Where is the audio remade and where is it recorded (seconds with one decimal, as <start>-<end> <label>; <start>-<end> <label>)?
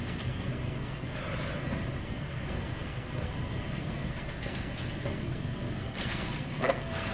0.0-1.2 remade; 1.2-2.0 recorded; 2.0-7.1 remade